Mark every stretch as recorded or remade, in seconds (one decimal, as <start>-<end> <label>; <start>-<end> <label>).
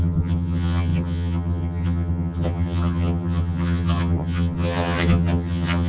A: 0.0-5.9 remade